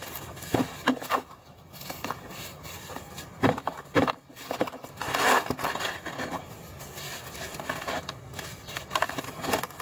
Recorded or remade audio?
recorded